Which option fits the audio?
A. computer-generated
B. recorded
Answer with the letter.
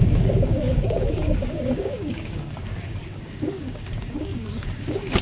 A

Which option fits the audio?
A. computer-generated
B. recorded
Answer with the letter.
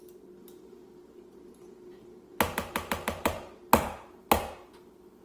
B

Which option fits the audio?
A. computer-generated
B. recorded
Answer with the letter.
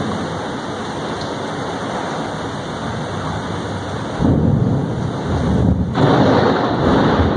B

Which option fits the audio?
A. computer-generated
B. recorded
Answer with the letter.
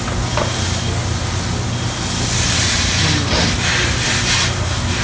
B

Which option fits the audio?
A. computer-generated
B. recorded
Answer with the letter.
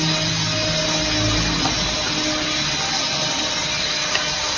B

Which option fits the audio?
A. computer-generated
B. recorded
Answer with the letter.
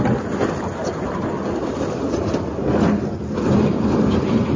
B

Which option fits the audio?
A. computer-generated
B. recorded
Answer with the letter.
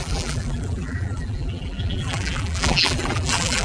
A